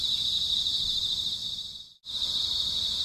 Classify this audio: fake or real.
real